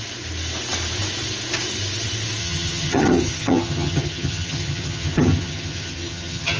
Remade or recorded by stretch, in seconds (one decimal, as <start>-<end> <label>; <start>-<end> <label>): 0.0-2.4 recorded; 2.4-6.6 remade